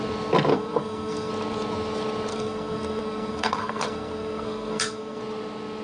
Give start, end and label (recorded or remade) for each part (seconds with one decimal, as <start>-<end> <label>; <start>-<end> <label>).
0.0-0.5 recorded; 0.5-1.3 remade; 1.3-2.3 recorded; 2.3-5.2 remade; 5.2-5.8 recorded